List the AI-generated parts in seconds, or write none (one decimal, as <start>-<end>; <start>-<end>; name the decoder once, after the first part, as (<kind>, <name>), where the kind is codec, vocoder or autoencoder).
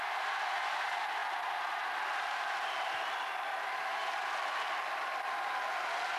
none